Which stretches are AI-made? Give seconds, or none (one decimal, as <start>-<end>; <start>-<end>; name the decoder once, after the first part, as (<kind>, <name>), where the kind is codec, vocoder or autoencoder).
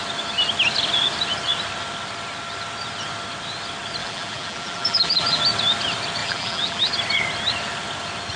4.0-5.4 (vocoder, BigVGAN v2); 6.2-6.9